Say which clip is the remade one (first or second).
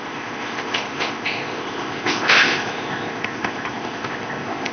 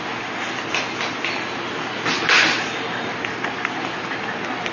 first